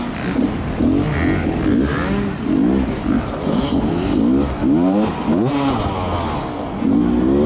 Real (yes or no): yes